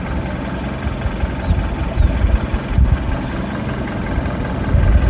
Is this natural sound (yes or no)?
yes